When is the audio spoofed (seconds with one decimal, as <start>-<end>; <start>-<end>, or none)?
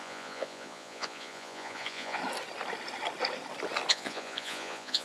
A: 0.0-2.2; 3.9-5.0